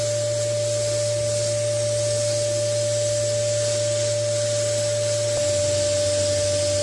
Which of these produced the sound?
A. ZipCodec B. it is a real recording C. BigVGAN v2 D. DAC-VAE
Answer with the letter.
B